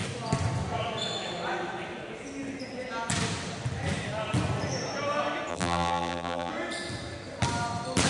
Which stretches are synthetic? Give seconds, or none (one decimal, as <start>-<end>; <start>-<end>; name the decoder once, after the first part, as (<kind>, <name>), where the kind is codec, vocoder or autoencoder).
5.5-6.5 (vocoder, BigVGAN v2)